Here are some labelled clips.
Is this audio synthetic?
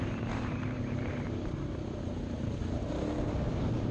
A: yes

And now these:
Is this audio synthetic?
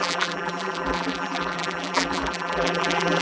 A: yes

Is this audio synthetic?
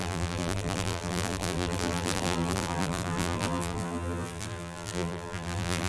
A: yes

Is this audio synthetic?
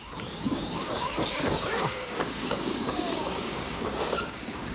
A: yes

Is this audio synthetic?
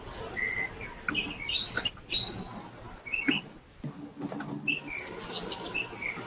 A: no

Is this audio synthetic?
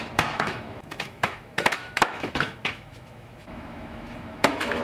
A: yes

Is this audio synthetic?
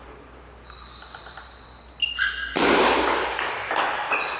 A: no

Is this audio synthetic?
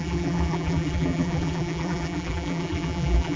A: yes